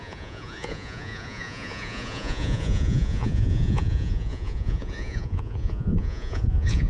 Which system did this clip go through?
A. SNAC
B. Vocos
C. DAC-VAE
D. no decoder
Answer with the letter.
B